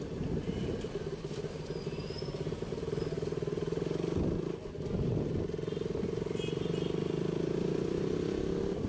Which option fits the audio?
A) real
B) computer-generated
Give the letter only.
A